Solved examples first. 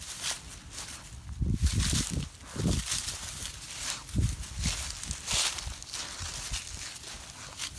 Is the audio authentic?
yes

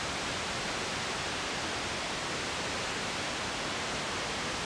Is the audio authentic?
yes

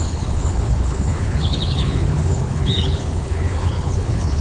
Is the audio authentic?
no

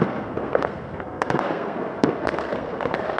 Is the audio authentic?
no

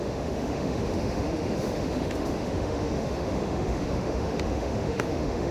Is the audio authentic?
no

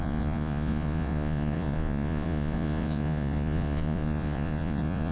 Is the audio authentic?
no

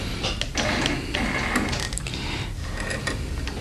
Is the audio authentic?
yes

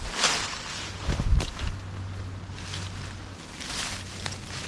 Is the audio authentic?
yes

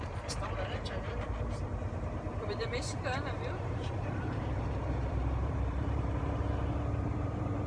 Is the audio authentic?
no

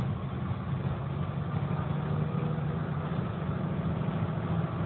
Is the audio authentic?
yes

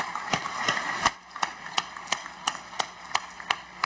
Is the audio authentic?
yes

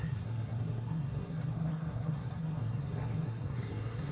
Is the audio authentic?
no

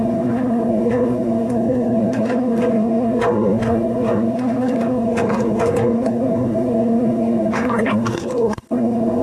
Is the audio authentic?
no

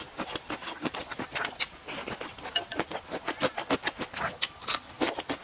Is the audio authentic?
yes